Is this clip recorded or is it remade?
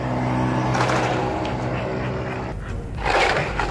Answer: recorded